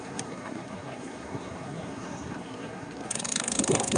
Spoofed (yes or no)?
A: yes